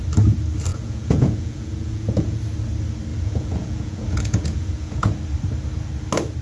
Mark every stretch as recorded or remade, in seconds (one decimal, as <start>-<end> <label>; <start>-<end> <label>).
0.0-0.7 recorded; 0.7-2.4 remade; 2.4-3.1 recorded; 3.1-5.1 remade; 5.1-6.4 recorded